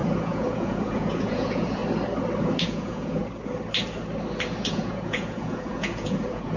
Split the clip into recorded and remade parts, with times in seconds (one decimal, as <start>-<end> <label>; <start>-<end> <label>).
0.0-1.8 remade; 1.8-2.6 recorded; 2.6-3.2 remade; 3.2-4.6 recorded; 4.6-6.6 remade